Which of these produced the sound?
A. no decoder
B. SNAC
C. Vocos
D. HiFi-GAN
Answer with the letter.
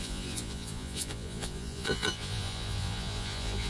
C